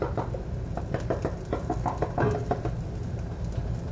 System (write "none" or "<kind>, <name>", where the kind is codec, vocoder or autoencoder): none